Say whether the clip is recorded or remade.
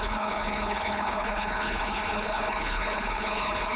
remade